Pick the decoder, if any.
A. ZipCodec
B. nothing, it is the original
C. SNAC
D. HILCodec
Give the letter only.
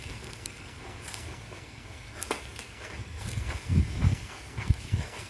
C